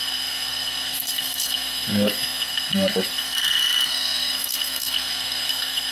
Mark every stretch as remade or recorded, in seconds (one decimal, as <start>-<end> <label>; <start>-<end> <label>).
0.0-5.9 remade